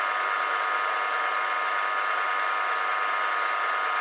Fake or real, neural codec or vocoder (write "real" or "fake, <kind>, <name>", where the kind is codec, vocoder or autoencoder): real